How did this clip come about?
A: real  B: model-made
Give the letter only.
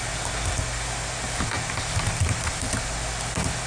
A